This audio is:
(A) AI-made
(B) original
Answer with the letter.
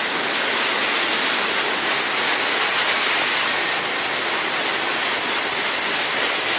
B